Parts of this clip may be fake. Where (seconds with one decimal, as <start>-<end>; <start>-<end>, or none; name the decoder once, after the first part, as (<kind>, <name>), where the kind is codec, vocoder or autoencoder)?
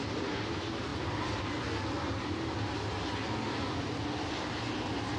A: none